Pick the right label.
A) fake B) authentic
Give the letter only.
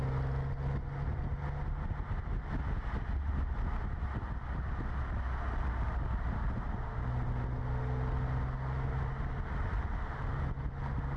B